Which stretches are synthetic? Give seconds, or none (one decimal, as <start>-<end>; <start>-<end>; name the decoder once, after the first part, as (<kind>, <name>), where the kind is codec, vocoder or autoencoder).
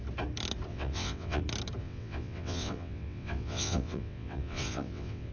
0.7-1.4 (vocoder, WaveNeXt); 1.8-5.3